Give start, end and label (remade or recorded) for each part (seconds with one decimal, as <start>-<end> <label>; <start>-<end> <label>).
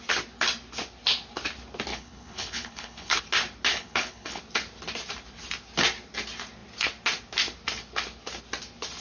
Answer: 0.0-1.9 recorded; 1.9-3.2 remade; 3.2-3.7 recorded; 3.7-4.4 remade; 4.4-9.0 recorded